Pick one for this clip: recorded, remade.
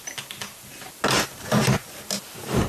recorded